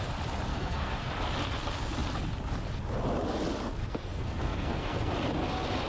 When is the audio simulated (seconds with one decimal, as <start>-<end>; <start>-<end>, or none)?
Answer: 0.5-1.1; 3.8-5.1